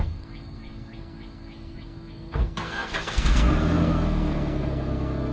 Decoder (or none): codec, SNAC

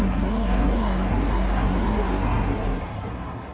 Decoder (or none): codec, SNAC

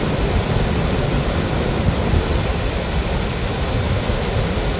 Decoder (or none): none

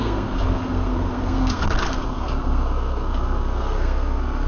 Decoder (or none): codec, SNAC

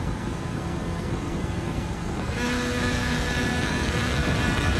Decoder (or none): codec, SNAC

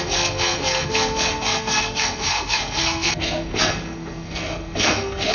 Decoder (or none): codec, SNAC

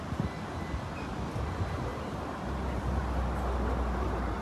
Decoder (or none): none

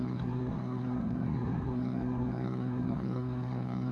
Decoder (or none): codec, SNAC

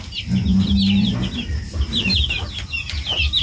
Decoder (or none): none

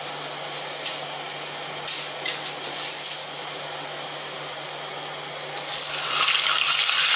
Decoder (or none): none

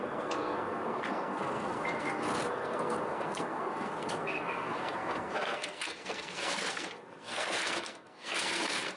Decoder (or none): codec, SNAC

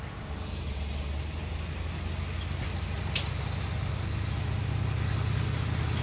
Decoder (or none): none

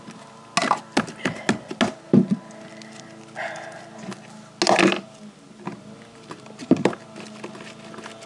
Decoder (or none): none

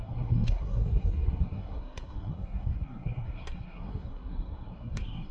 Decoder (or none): codec, SNAC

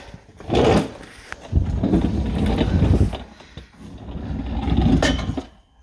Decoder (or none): none